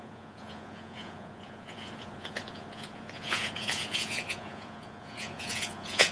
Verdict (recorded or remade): remade